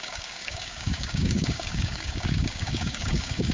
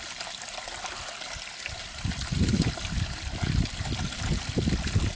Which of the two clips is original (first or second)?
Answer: second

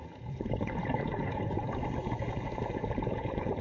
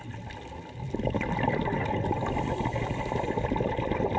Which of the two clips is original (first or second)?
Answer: second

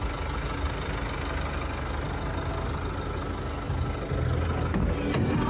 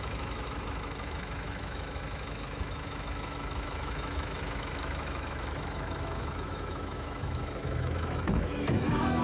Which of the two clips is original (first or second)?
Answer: first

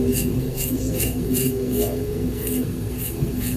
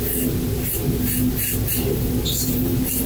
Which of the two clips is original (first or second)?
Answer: second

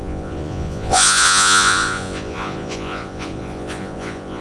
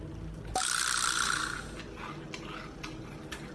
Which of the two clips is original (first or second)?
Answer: second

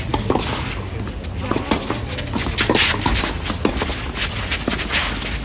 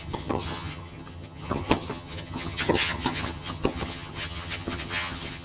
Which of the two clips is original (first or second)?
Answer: first